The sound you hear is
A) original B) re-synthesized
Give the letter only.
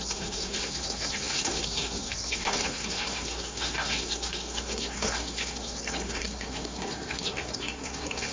B